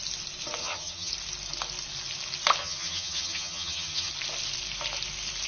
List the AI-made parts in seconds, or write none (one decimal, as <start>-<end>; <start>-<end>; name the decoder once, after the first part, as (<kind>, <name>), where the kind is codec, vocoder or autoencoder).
0.6-1.1 (vocoder, HiFi-GAN); 2.6-4.1